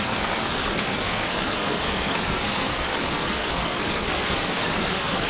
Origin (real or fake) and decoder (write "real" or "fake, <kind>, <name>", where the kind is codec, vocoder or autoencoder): fake, codec, SNAC